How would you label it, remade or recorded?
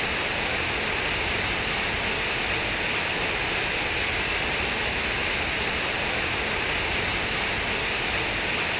recorded